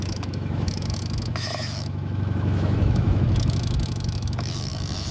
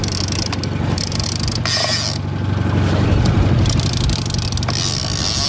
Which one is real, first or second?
second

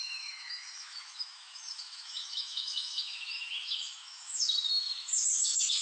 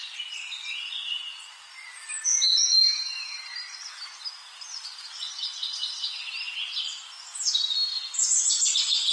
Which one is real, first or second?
second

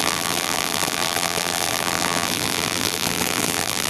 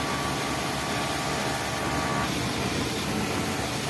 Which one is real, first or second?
second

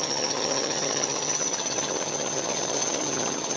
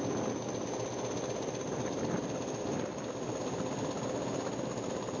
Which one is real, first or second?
second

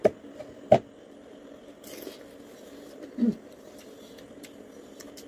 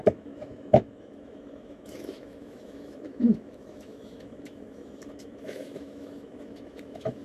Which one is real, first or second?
first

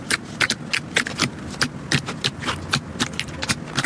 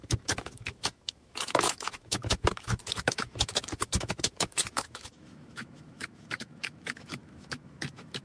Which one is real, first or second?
first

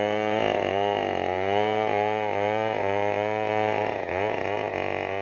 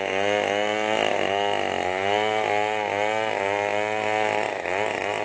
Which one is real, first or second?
second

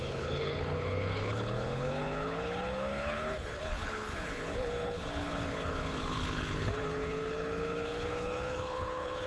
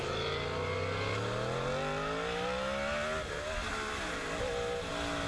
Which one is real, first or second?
second